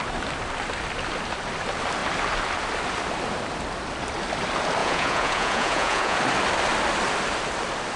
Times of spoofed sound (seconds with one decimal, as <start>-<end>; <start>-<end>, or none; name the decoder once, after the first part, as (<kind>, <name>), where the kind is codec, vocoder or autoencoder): 4.8-6.2 (vocoder, Vocos)